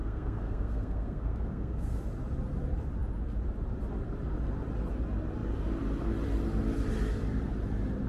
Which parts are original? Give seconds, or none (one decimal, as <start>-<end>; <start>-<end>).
2.0-8.1